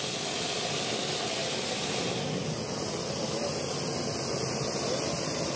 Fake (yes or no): no